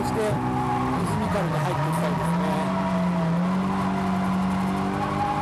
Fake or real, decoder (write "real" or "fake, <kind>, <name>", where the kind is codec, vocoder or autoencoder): real